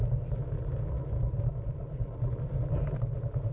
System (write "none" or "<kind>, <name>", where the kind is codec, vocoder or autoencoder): none